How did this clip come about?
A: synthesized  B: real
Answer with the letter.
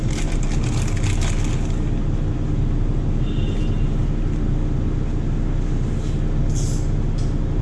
B